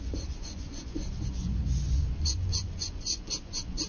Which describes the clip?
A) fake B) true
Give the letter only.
A